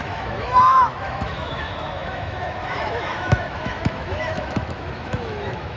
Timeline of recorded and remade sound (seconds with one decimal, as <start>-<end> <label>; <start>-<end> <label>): 0.0-5.8 remade